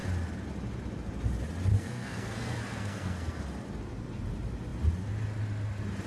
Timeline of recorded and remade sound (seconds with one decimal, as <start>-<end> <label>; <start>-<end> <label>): 0.0-1.7 recorded; 1.7-3.4 remade; 3.4-6.1 recorded